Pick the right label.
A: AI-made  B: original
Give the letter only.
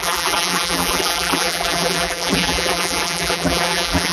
A